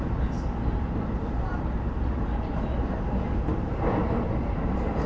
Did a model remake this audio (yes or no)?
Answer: no